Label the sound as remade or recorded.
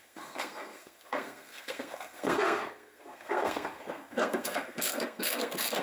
remade